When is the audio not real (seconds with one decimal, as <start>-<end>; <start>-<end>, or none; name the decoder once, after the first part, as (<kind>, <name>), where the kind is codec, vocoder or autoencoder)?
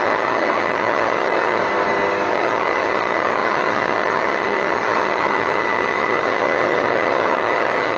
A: 0.0-1.6 (vocoder, HiFi-GAN); 2.3-8.0